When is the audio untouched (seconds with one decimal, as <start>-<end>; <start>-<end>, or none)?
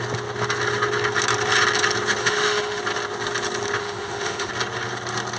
0.0-2.2; 2.8-3.8; 4.5-5.4